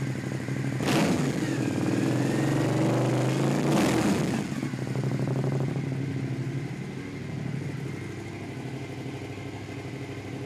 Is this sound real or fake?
real